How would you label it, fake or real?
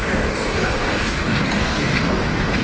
fake